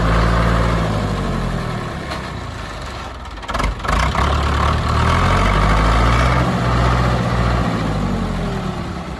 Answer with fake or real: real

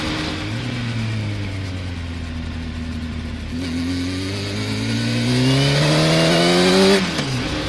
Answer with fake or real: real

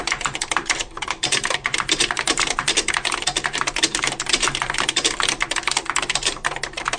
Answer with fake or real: fake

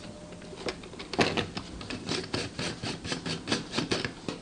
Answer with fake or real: real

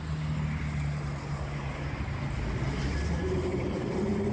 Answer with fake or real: real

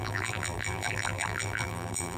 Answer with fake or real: fake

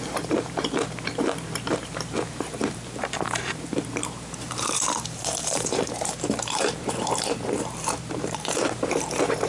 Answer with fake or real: fake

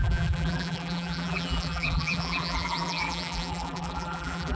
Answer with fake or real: fake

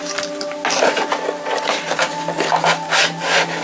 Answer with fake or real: real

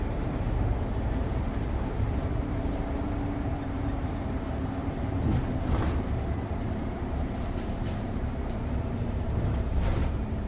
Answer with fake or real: fake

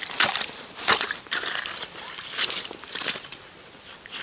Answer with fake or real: fake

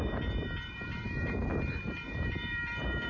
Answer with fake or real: fake